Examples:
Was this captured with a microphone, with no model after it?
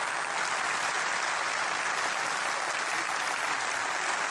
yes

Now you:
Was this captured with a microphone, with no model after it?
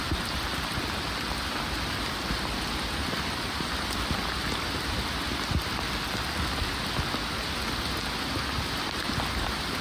yes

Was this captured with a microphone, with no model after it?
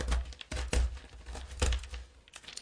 yes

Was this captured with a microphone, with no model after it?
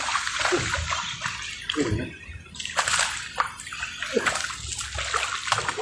yes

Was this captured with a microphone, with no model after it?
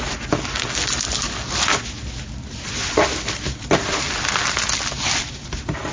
yes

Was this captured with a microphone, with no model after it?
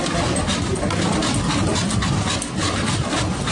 yes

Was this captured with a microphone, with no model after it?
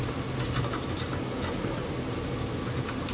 yes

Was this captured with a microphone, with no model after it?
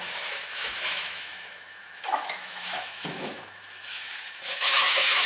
no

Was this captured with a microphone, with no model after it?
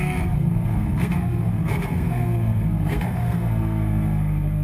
no